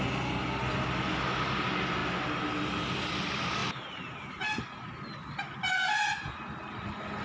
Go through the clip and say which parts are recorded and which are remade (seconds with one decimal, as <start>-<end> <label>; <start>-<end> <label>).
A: 0.0-7.2 recorded